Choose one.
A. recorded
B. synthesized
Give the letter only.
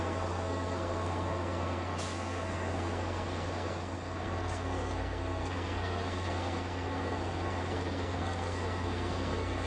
B